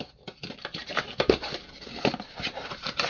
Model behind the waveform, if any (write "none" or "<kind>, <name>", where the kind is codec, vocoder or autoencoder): vocoder, BigVGAN v2